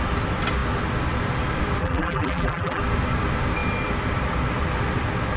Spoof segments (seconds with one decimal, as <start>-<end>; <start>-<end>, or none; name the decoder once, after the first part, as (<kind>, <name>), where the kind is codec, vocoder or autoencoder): 1.8-2.8 (vocoder, BigVGAN v2)